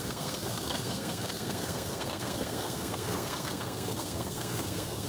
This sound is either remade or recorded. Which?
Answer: remade